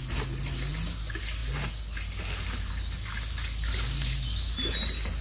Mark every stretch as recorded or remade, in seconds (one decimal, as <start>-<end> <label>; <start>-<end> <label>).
0.0-5.2 recorded